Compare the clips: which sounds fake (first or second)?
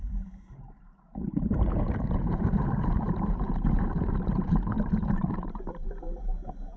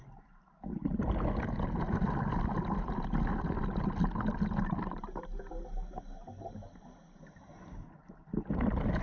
first